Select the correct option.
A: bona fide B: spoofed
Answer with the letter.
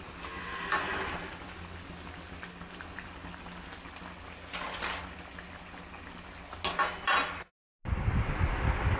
A